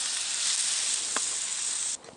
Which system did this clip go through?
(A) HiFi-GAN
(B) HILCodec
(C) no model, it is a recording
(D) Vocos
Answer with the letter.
C